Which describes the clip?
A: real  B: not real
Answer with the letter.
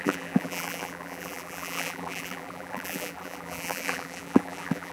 B